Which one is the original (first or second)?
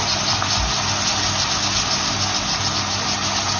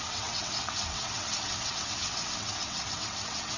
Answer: first